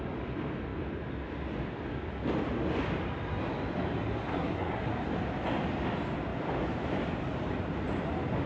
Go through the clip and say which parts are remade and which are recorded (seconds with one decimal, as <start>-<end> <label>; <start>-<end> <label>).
0.0-4.3 recorded; 4.3-4.9 remade; 4.9-8.5 recorded